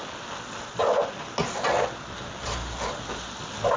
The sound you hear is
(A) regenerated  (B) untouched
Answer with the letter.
B